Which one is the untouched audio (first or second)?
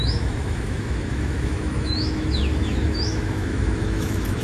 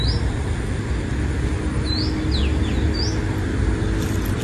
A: second